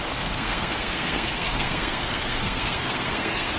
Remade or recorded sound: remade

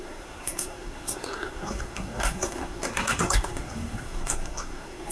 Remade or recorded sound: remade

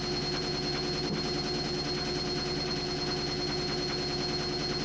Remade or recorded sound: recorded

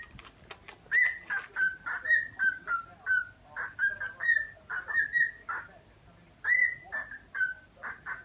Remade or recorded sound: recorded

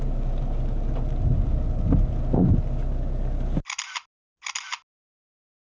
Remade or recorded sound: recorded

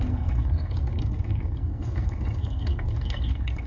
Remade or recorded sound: remade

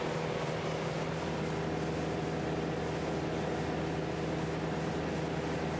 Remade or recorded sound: recorded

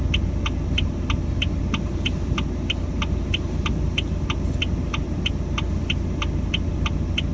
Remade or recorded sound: recorded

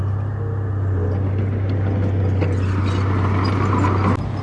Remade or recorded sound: recorded